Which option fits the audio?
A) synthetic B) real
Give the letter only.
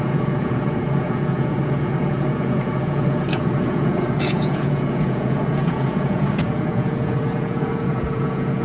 A